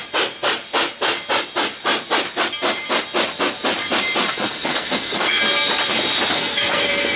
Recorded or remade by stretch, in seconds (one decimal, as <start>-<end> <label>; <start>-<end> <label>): 0.0-4.3 recorded; 4.3-5.4 remade; 5.4-6.3 recorded; 6.3-7.2 remade